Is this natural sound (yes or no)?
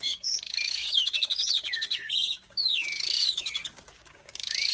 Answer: no